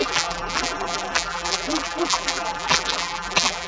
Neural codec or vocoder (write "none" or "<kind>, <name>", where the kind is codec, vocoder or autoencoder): vocoder, BigVGAN v2